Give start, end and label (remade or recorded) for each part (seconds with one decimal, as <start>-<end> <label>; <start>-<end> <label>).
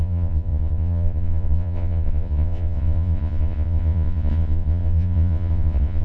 0.0-6.0 remade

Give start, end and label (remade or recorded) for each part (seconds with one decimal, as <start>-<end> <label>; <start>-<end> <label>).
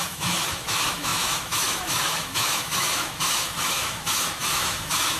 0.0-5.2 remade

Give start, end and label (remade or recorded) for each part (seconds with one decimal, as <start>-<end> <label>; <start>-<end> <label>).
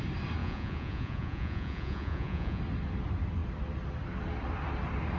0.0-0.4 recorded; 0.4-2.6 remade; 2.6-5.2 recorded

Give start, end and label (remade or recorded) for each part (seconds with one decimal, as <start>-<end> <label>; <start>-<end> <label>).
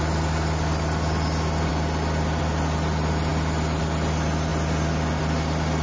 0.0-5.8 recorded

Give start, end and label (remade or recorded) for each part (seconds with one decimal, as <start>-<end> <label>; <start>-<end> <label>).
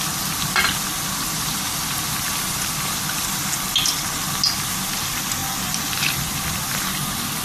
0.0-7.4 recorded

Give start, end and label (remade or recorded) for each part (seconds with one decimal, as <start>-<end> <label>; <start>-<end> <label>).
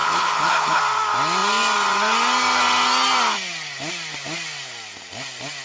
0.0-0.8 remade; 0.8-5.6 recorded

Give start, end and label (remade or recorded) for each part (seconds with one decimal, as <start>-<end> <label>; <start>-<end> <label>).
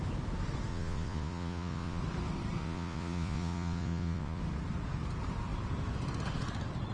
0.0-0.7 recorded; 0.7-2.0 remade; 2.0-2.6 recorded; 2.6-4.4 remade; 4.4-6.9 recorded